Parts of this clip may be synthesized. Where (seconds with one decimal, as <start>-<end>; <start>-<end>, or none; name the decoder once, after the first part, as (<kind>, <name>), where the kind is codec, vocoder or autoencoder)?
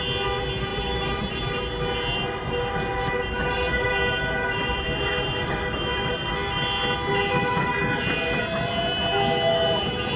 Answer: 0.7-1.5 (vocoder, BigVGAN v2); 2.9-6.1